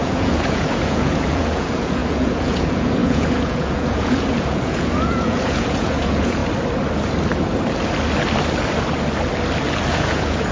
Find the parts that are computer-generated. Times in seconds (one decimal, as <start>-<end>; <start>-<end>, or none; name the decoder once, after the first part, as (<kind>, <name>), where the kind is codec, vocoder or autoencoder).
0.0-6.4 (vocoder, Vocos); 9.9-10.5